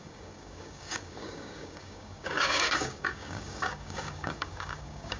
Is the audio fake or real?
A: fake